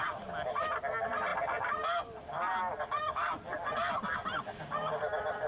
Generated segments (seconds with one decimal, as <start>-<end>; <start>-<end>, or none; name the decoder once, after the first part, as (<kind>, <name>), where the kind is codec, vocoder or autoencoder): none